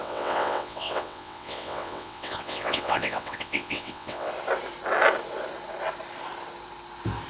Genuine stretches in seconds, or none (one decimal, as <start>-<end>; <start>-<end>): 4.3-7.3